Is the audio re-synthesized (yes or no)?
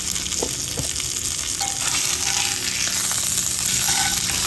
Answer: no